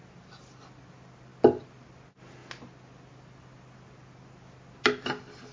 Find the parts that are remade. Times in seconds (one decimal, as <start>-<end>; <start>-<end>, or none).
none